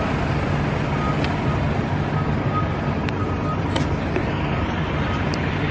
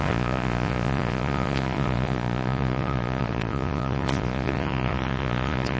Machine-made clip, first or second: second